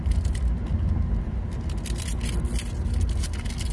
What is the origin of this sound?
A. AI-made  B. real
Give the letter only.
B